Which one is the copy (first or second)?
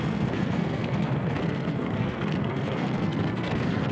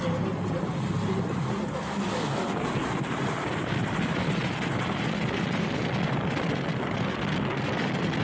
first